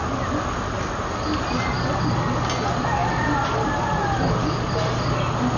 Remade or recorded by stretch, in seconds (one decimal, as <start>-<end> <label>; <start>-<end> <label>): 0.0-5.6 recorded